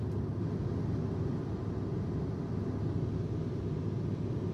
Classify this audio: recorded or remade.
recorded